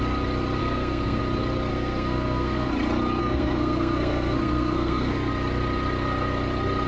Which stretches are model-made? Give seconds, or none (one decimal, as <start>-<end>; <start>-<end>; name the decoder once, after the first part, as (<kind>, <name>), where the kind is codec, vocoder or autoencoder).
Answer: 0.6-1.2 (codec, SNAC); 1.7-2.7; 3.2-5.3